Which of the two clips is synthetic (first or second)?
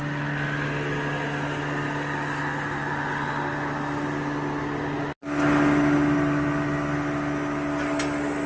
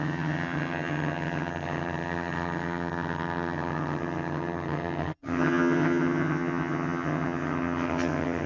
second